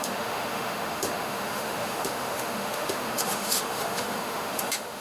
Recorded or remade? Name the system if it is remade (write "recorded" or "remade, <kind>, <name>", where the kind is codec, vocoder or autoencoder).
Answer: remade, autoencoder, DAC-VAE